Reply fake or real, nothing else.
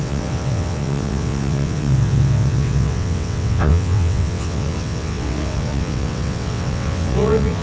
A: fake